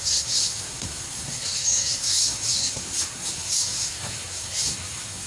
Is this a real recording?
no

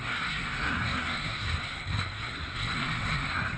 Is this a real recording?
no